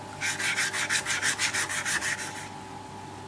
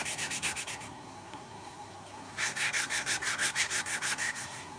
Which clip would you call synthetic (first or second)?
second